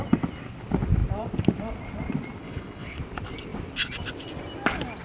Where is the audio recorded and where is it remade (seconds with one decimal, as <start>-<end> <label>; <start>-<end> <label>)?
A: 0.0-2.4 recorded; 2.4-3.0 remade; 3.0-5.0 recorded